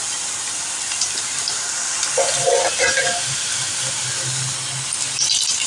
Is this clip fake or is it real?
real